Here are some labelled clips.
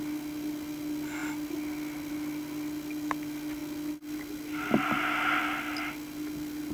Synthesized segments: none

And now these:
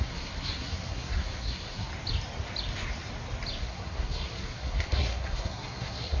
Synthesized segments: 0.0-1.9 (codec, SNAC); 3.6-6.2

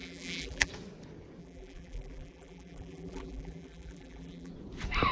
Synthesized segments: 0.0-0.7 (vocoder, BigVGAN v2); 1.4-4.5

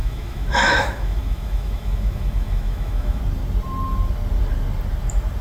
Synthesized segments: 0.0-3.2 (autoencoder, DAC-VAE)

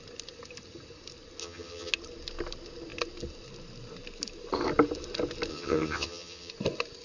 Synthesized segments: 1.4-1.9 (vocoder, HiFi-GAN); 5.5-6.5